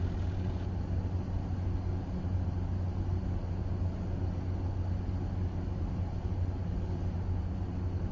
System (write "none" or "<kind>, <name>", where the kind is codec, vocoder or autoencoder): none